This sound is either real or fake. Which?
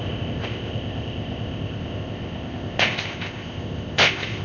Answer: fake